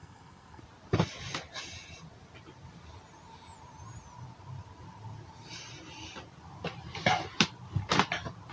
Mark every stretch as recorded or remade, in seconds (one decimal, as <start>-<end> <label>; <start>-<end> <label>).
0.0-0.6 remade; 0.6-8.5 recorded